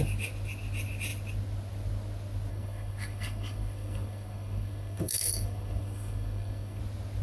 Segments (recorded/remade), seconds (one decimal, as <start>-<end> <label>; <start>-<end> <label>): 0.0-2.5 recorded; 2.5-6.8 remade; 6.8-7.2 recorded